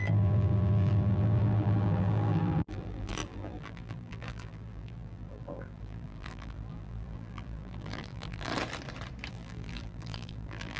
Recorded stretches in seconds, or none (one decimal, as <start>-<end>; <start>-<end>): 8.5-9.3